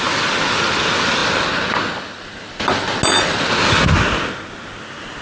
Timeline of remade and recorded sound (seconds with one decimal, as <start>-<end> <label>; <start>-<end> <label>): 0.0-5.2 recorded